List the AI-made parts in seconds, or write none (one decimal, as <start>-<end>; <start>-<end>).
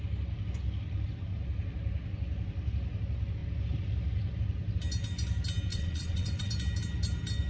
5.7-6.5